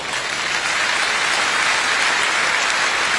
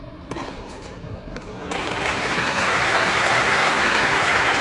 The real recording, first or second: first